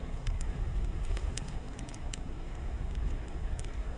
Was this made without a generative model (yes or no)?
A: no